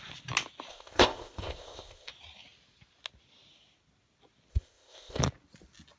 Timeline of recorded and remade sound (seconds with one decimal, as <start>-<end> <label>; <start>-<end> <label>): 0.0-0.7 recorded; 0.7-2.1 remade; 2.1-4.5 recorded; 4.5-5.2 remade; 5.2-6.0 recorded